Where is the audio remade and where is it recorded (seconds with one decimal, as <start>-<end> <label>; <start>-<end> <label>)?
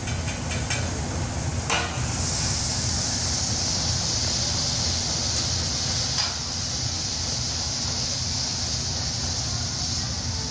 0.0-10.5 recorded